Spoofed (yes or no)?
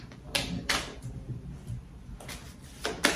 no